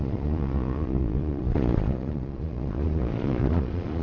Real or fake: fake